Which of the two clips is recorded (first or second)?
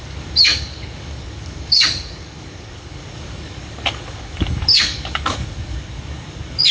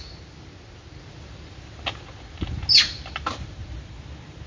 second